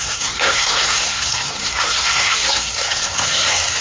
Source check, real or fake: fake